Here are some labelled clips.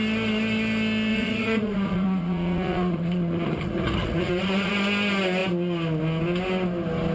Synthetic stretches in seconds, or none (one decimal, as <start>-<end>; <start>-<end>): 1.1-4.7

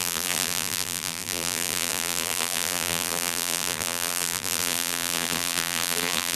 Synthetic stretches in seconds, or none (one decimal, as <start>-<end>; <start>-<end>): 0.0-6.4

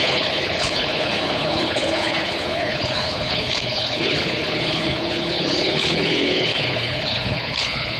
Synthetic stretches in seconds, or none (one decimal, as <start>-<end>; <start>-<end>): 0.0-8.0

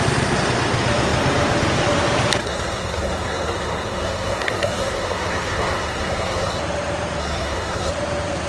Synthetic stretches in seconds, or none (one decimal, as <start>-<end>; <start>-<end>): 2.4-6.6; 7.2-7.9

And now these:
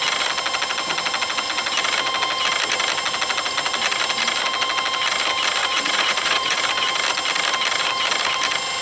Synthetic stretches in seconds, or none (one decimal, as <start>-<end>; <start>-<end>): 5.6-6.6

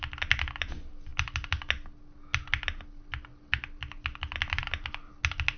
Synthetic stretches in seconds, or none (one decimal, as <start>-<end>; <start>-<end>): none

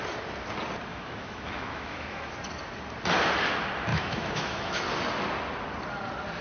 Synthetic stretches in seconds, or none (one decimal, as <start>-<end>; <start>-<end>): 0.9-2.3; 3.9-4.8

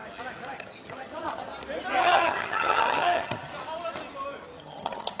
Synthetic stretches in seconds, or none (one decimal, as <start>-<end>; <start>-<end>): 0.6-1.5; 2.0-3.5; 4.6-5.2